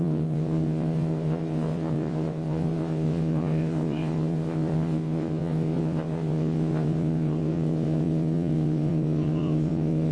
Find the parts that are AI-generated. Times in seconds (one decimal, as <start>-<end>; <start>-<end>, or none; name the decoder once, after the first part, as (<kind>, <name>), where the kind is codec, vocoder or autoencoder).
0.0-10.1 (vocoder, WaveNeXt)